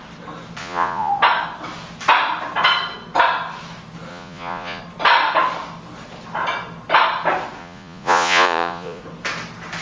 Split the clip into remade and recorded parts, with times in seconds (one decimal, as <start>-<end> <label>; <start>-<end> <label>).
0.0-0.6 recorded; 0.6-1.1 remade; 1.1-4.1 recorded; 4.1-4.8 remade; 4.8-7.6 recorded; 7.6-9.0 remade; 9.0-9.8 recorded